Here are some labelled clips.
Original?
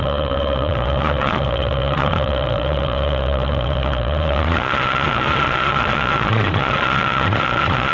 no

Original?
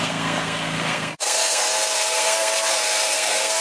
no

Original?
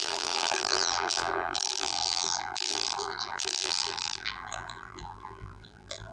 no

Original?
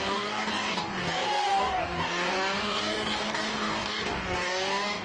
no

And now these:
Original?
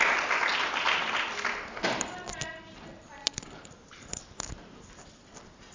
yes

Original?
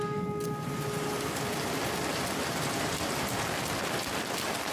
yes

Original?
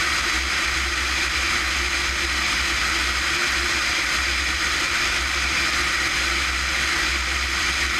yes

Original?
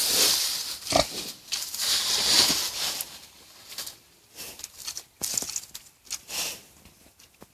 yes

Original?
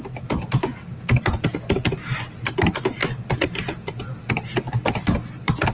yes